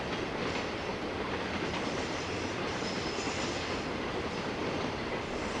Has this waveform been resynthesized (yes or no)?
no